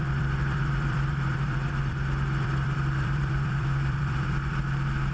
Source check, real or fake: fake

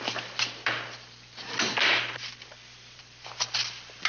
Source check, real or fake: real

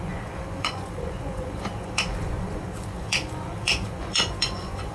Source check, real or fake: fake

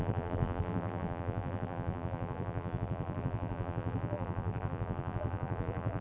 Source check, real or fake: fake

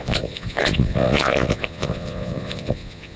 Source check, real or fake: fake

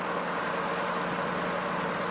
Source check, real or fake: real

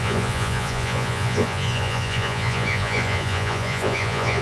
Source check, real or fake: fake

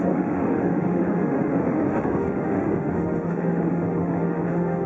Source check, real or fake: fake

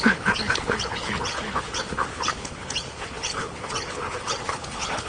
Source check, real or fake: fake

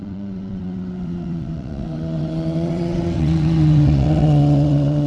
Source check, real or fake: fake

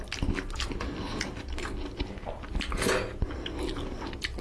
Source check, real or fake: real